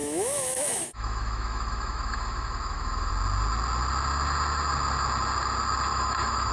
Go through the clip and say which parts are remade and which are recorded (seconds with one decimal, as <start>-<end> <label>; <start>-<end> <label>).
0.0-3.1 remade; 3.1-5.9 recorded; 5.9-6.5 remade